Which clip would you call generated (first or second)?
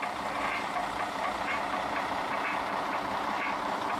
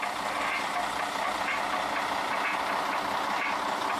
first